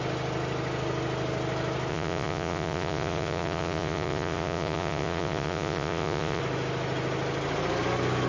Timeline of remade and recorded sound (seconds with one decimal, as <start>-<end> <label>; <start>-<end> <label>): 0.0-1.9 recorded; 1.9-6.4 remade; 6.4-8.3 recorded